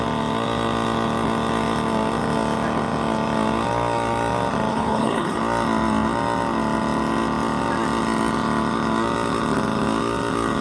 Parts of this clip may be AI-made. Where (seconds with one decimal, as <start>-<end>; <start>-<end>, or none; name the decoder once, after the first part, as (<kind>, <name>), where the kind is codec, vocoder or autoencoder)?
4.7-5.4 (codec, HILCodec)